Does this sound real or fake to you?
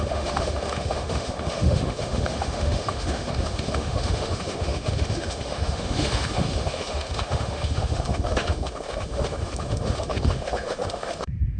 fake